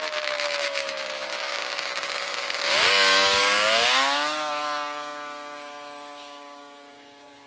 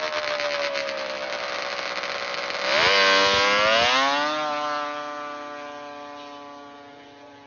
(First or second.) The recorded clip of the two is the second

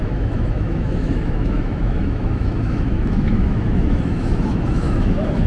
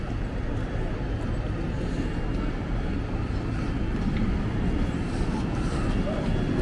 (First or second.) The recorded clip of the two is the second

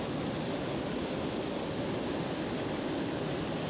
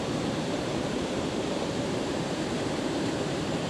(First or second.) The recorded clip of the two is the first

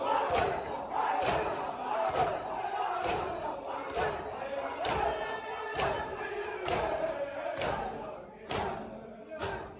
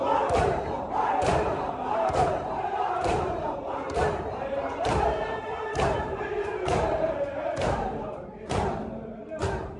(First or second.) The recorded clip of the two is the first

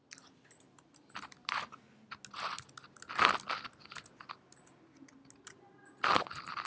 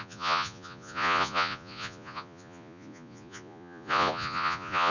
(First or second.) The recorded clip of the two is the first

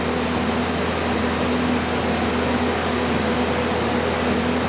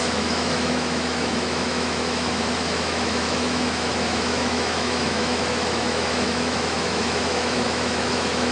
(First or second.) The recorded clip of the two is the first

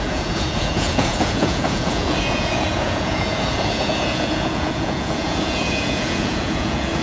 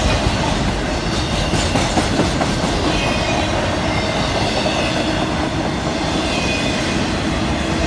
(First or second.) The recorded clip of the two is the second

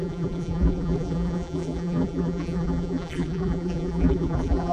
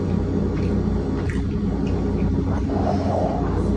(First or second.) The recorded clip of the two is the second